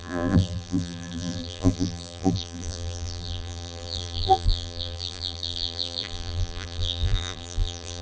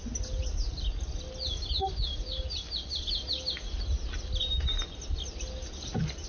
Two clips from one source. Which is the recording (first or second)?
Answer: second